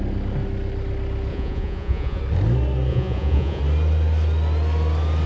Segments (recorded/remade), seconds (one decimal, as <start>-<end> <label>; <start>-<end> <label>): 0.0-1.3 recorded; 1.3-2.2 remade; 2.2-2.9 recorded; 2.9-3.6 remade; 3.6-5.3 recorded